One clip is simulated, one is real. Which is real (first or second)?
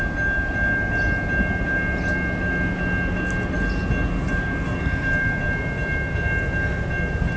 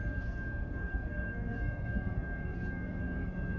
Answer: first